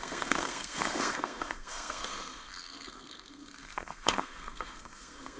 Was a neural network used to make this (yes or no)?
yes